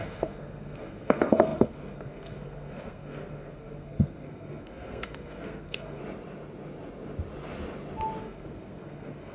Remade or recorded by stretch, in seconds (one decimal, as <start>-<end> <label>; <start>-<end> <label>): 0.0-6.0 remade; 6.0-8.2 recorded; 8.2-9.3 remade